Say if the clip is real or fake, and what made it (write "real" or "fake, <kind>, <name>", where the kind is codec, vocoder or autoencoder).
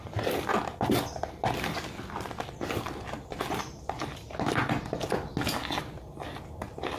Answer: real